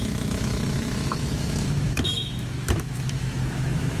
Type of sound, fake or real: fake